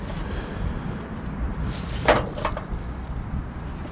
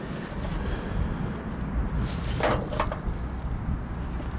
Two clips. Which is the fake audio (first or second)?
first